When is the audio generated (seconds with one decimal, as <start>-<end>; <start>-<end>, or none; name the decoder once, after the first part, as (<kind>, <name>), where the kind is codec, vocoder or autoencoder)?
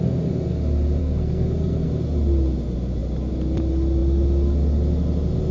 1.0-1.9 (codec, SNAC)